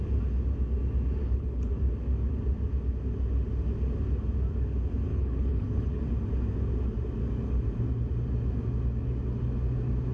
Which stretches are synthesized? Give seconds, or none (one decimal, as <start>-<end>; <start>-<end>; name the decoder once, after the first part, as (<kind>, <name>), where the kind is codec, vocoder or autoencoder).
1.2-1.7 (codec, HILCodec); 5.1-6.0